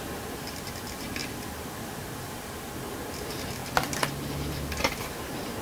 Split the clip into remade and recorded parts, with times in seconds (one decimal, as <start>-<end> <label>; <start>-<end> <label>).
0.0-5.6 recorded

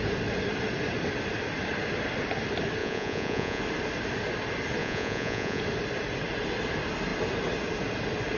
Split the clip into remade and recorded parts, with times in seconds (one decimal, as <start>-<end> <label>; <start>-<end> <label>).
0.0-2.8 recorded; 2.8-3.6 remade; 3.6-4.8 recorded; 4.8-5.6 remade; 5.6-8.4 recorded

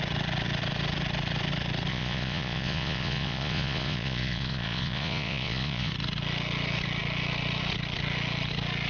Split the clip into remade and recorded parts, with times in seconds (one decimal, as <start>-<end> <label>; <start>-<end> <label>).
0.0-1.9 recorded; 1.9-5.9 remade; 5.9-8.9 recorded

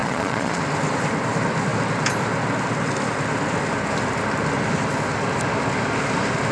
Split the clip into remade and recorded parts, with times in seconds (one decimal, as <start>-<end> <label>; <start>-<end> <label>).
0.0-0.6 remade; 0.6-6.5 recorded

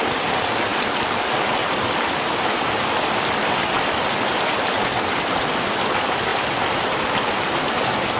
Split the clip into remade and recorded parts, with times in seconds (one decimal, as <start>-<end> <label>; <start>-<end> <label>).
0.0-8.2 recorded

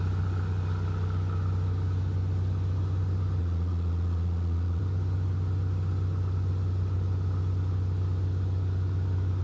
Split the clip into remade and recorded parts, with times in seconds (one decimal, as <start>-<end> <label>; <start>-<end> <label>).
0.0-3.4 recorded; 3.4-4.8 remade; 4.8-9.4 recorded

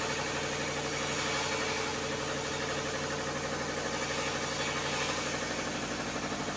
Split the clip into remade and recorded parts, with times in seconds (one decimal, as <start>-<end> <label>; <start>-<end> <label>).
0.0-6.6 recorded